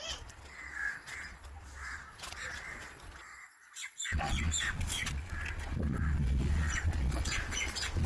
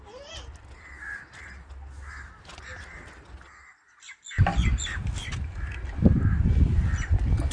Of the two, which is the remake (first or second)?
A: first